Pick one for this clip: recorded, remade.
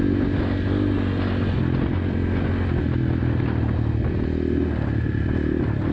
recorded